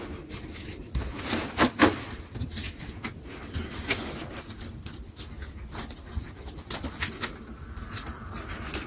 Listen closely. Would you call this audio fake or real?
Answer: real